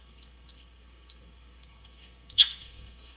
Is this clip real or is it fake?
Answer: fake